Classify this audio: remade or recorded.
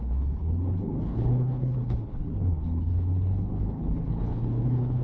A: remade